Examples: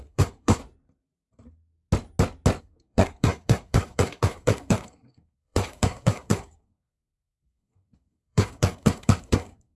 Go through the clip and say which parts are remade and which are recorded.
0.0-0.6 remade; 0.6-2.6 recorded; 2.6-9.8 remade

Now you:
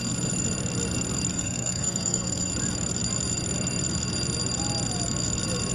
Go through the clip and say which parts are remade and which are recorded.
0.0-1.3 recorded; 1.3-2.5 remade; 2.5-5.7 recorded

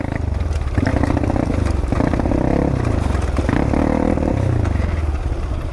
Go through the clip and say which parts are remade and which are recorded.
0.0-5.7 recorded

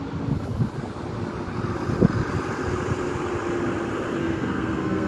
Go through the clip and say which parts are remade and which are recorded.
0.0-4.2 recorded; 4.2-5.1 remade